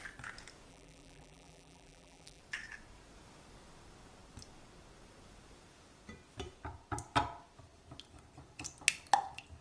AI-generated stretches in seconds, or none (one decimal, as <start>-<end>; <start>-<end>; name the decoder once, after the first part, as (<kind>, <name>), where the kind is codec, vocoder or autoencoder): 0.7-2.4 (vocoder, BigVGAN v2)